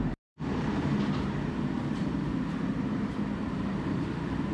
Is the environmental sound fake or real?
fake